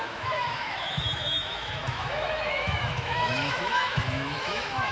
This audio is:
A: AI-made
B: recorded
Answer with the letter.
A